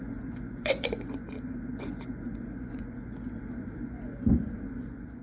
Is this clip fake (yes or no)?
yes